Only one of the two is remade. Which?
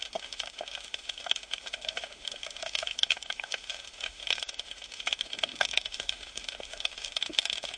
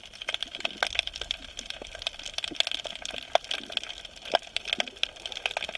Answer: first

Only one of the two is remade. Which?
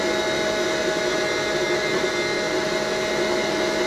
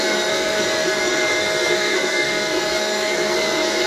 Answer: second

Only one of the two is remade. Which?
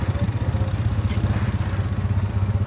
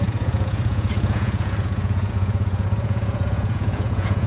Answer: second